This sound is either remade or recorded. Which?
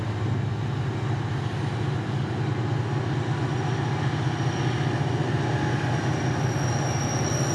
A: recorded